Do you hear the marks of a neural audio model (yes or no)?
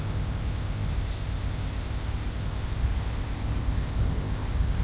yes